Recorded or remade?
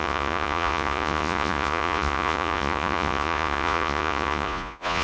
remade